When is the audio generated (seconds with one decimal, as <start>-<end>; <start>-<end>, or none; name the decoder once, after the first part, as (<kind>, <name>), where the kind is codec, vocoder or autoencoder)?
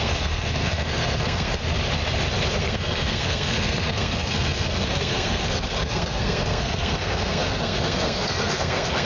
0.0-1.6 (codec, SNAC); 2.6-9.1